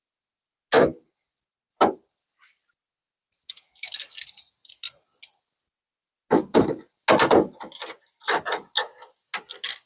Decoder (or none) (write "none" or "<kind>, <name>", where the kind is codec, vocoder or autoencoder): none